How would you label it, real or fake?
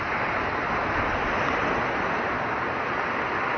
real